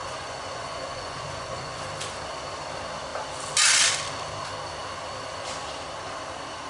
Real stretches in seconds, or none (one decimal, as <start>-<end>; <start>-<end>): 1.8-6.7